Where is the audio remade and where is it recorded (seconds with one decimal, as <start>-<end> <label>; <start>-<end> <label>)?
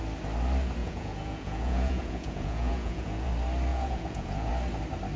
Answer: 0.0-0.8 recorded; 0.8-3.3 remade; 3.3-3.7 recorded; 3.7-4.5 remade; 4.5-5.2 recorded